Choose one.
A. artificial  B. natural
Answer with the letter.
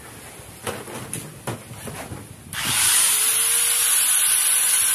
B